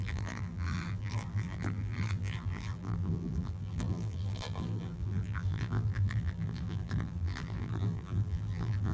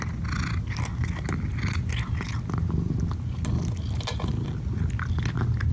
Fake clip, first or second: first